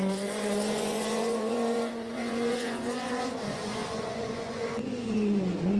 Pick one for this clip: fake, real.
fake